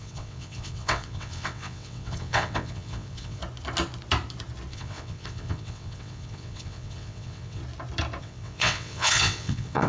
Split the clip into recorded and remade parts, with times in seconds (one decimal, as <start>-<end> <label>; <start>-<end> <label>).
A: 0.0-3.4 remade; 3.4-4.7 recorded; 4.7-7.6 remade; 7.6-8.2 recorded; 8.2-9.9 remade